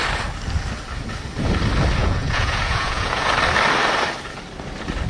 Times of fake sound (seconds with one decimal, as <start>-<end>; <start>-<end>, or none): 2.0-3.3